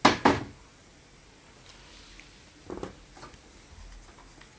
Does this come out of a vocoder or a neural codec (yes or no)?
no